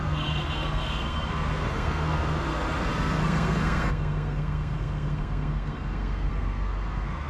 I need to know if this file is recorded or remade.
remade